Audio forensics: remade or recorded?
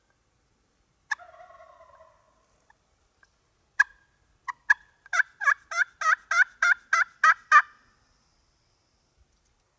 recorded